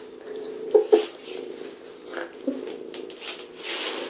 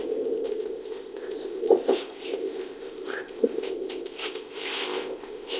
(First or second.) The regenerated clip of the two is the second